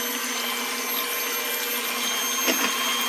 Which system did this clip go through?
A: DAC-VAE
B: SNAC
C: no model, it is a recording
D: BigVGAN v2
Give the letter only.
C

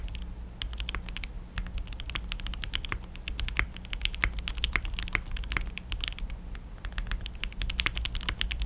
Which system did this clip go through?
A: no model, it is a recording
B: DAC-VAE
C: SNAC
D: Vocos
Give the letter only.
A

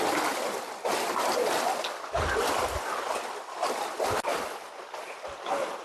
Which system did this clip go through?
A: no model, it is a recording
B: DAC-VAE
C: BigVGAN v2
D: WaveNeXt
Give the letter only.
A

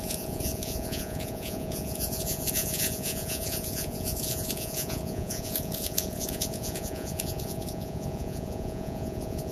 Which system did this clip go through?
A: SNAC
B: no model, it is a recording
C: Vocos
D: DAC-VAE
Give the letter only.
C